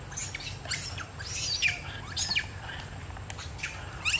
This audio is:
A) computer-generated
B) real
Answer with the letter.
B